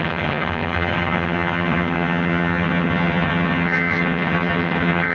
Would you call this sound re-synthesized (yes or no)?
yes